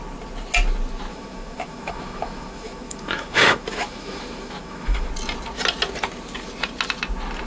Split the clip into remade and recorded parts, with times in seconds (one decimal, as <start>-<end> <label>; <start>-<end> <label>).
0.0-1.1 recorded; 1.1-5.1 remade; 5.1-7.5 recorded